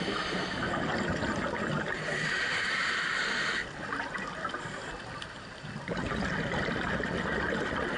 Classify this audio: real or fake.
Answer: real